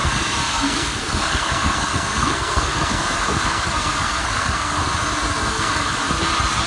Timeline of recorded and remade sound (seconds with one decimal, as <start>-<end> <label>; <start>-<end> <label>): 0.0-4.8 remade; 4.8-5.5 recorded; 5.5-6.0 remade; 6.0-6.7 recorded